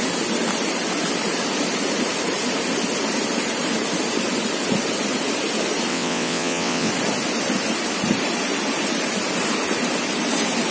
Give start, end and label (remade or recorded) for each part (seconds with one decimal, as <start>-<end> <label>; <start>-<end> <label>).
0.0-5.9 recorded; 5.9-6.9 remade; 6.9-10.7 recorded